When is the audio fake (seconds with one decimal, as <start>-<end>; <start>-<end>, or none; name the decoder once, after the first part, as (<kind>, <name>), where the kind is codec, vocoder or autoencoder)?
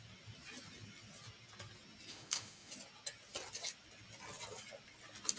2.1-2.7 (autoencoder, DAC-VAE)